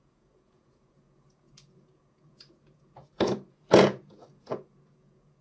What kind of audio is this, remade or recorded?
remade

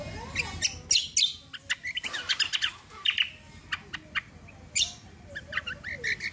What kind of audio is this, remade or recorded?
recorded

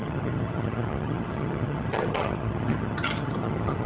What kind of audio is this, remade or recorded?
remade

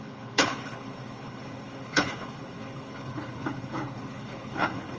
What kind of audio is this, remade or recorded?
remade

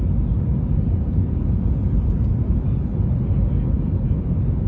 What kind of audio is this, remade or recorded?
recorded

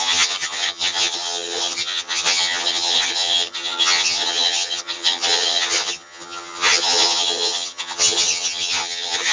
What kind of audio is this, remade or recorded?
remade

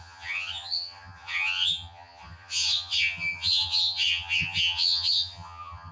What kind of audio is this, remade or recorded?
remade